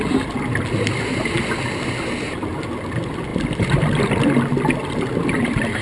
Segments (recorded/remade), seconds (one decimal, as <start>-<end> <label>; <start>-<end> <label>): 0.0-3.3 recorded; 3.3-4.2 remade; 4.2-5.8 recorded